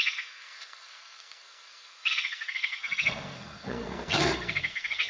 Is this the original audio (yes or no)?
no